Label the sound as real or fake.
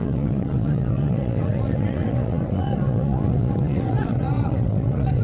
fake